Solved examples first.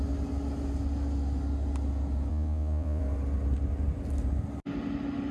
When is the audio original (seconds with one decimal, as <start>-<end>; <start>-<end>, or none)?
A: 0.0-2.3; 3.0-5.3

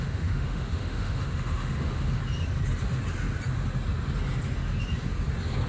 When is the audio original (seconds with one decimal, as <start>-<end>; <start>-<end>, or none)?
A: 2.2-5.7

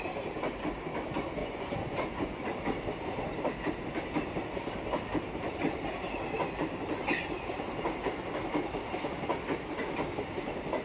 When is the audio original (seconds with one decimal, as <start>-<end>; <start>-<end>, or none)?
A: 0.0-1.4; 2.4-10.8

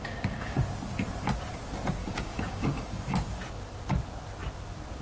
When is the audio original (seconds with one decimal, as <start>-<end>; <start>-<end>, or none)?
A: 0.6-2.0; 3.0-5.0

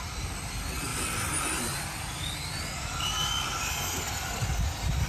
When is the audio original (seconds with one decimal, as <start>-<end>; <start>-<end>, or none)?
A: 0.0-5.1

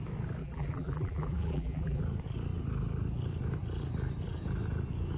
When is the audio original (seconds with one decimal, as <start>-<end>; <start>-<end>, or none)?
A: 0.0-0.4; 2.0-5.2

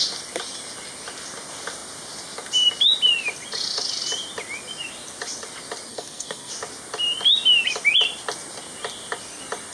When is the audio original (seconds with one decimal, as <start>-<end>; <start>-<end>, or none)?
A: 0.0-5.9; 6.5-9.7